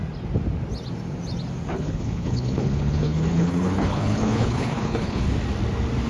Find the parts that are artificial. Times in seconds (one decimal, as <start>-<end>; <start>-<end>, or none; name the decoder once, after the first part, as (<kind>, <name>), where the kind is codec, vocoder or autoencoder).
1.7-5.3 (codec, HILCodec)

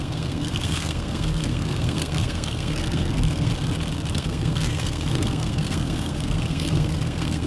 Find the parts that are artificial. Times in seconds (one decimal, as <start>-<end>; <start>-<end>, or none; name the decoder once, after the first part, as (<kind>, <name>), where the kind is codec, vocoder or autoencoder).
0.0-3.5 (codec, SNAC); 4.1-7.5

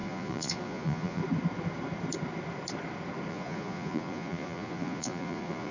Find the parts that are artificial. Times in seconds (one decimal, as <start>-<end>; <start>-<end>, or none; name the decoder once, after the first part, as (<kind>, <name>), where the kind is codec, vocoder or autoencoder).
0.0-1.2 (vocoder, Vocos); 3.3-5.7